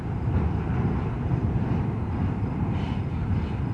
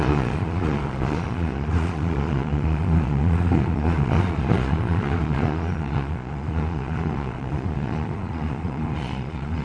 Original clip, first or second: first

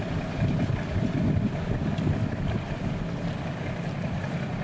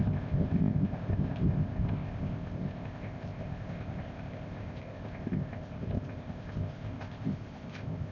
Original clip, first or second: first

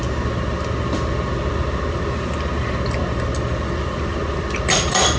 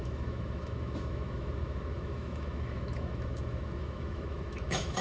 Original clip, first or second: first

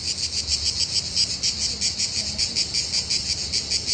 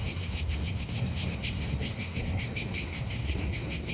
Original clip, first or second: first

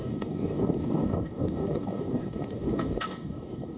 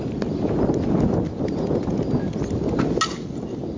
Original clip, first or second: second